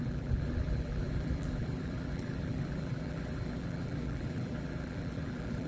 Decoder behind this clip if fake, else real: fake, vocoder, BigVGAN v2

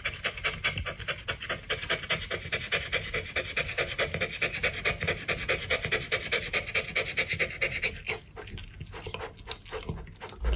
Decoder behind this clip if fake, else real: real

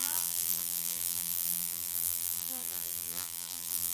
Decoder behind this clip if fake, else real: fake, vocoder, BigVGAN v2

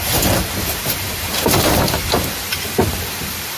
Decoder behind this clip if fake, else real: fake, vocoder, BigVGAN v2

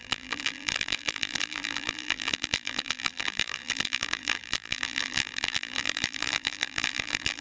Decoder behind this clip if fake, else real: fake, vocoder, BigVGAN v2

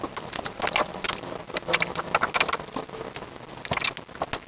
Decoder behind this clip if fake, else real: real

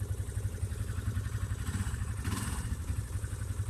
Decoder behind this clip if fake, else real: fake, vocoder, BigVGAN v2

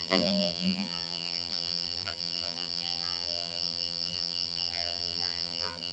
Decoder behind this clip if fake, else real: fake, vocoder, BigVGAN v2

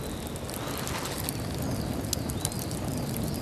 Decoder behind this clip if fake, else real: real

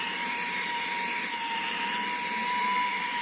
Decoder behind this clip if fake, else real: fake, vocoder, BigVGAN v2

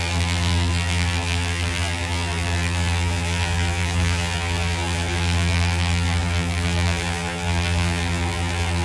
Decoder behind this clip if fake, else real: fake, vocoder, BigVGAN v2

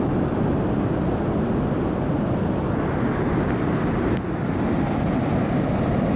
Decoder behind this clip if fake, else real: real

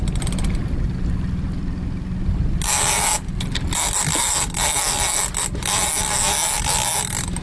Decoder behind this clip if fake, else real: real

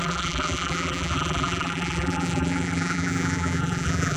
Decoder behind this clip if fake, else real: fake, vocoder, BigVGAN v2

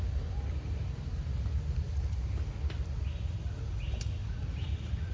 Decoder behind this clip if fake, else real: real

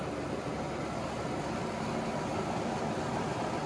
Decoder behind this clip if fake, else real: real